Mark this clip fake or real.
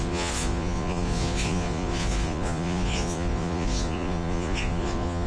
fake